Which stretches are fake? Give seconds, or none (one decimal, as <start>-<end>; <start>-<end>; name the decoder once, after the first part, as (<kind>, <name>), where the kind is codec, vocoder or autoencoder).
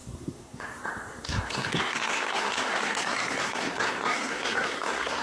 0.0-5.2 (codec, SNAC)